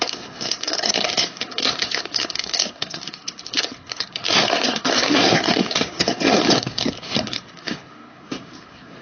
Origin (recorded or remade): remade